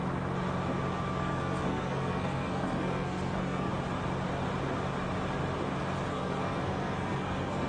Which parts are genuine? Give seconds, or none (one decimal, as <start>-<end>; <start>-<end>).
0.0-1.2; 3.7-6.1